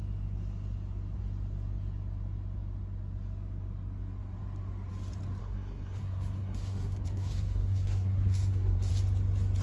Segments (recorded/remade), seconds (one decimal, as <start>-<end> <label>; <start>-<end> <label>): 0.0-5.4 recorded; 5.4-8.9 remade; 8.9-9.6 recorded